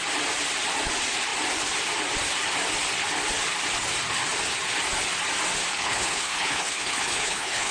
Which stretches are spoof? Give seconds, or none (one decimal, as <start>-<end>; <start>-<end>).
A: 5.7-7.7